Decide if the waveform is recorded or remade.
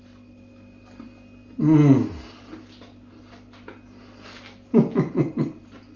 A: recorded